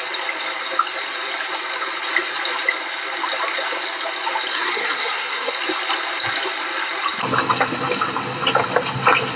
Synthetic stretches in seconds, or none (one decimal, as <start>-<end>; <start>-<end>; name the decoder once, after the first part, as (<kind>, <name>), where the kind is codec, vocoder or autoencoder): 4.5-5.5 (codec, SNAC)